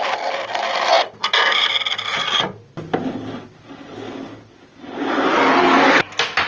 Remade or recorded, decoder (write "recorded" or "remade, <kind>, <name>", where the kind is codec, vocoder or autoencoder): recorded